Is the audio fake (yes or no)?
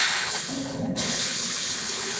yes